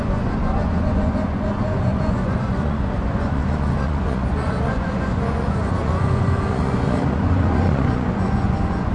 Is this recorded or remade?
remade